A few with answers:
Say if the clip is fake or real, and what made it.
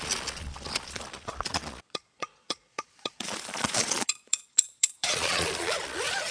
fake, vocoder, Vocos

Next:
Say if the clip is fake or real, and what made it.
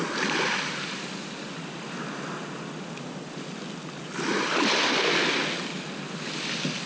real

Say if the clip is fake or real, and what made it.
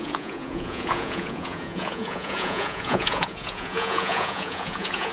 fake, vocoder, Vocos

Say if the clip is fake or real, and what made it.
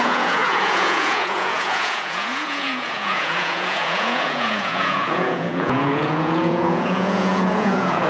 fake, vocoder, Vocos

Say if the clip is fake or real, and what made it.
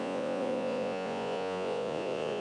fake, vocoder, Vocos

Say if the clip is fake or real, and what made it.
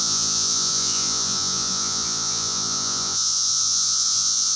fake, vocoder, Vocos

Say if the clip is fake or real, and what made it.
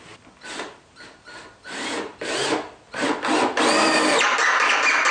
real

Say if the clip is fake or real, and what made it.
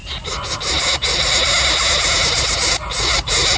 real